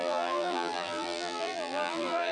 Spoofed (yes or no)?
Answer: yes